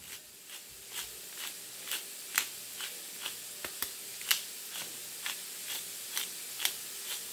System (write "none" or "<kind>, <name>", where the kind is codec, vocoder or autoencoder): none